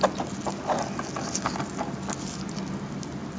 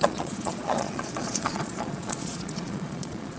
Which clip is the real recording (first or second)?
first